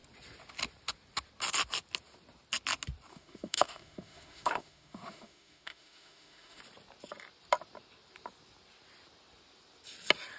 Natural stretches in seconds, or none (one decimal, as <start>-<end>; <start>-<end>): 0.0-3.1; 6.6-10.4